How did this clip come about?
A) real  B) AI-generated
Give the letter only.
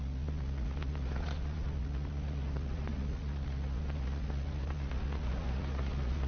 B